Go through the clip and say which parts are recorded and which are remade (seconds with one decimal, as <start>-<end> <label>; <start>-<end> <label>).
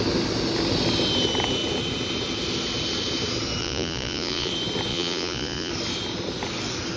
0.0-3.6 recorded; 3.6-4.5 remade; 4.5-4.9 recorded; 4.9-5.7 remade; 5.7-7.0 recorded